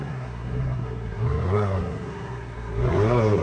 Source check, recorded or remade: remade